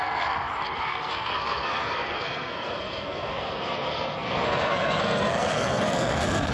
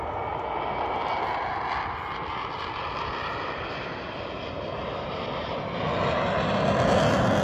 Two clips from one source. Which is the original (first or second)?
second